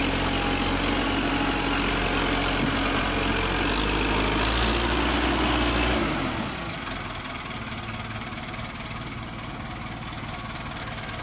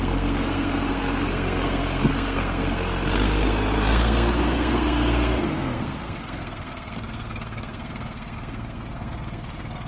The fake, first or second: second